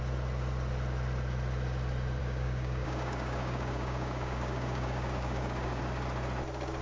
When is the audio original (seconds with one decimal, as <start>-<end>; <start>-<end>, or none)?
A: 0.0-2.2; 5.8-6.8